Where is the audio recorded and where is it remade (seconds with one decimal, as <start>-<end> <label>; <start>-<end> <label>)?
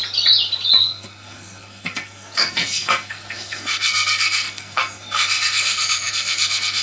0.0-0.8 recorded; 0.8-6.8 remade